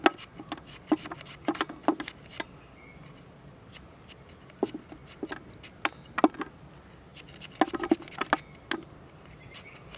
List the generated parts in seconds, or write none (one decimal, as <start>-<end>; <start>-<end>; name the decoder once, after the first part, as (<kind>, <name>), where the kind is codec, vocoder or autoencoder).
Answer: none

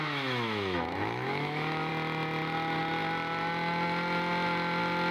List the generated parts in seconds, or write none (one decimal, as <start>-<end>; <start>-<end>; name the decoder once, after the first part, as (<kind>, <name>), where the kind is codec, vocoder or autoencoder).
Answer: 0.0-1.9 (autoencoder, DAC-VAE)

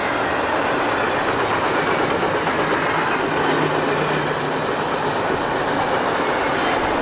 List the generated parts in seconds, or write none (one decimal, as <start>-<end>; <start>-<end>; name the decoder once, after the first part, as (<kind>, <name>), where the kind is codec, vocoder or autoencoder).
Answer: none

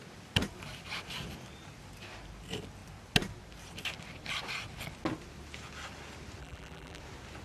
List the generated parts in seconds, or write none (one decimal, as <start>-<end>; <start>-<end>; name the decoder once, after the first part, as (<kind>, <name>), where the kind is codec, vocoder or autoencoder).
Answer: 6.4-7.0 (vocoder, BigVGAN v2)

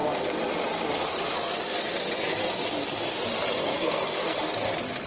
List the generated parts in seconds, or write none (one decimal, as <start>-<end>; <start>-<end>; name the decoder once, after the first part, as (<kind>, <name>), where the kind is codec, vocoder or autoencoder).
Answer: 3.6-4.4 (codec, SNAC)